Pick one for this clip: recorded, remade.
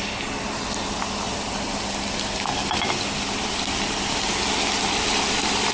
recorded